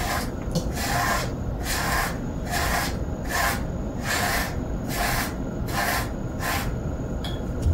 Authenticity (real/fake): real